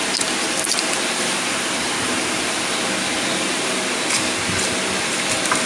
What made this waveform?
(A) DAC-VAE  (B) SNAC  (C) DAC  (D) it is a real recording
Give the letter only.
D